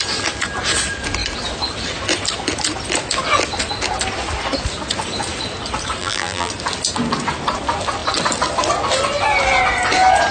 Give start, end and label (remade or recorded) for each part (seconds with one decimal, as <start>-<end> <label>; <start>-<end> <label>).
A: 0.0-6.0 recorded; 6.0-6.5 remade; 6.5-10.3 recorded

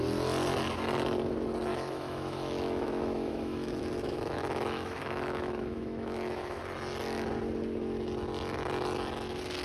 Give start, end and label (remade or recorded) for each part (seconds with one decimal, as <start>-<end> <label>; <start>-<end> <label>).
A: 0.0-1.7 recorded; 1.7-6.6 remade; 6.6-9.6 recorded